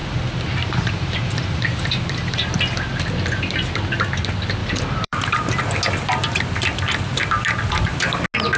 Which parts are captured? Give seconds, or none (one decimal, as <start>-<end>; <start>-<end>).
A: 2.5-4.6; 5.6-8.6